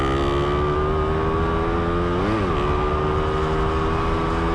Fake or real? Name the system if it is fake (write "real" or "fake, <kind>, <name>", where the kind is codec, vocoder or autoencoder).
real